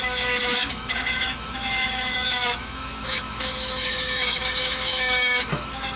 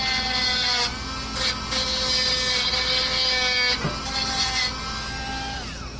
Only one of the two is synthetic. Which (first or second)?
first